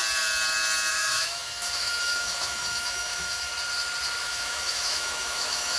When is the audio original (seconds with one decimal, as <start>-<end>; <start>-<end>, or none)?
0.0-0.9; 3.5-4.2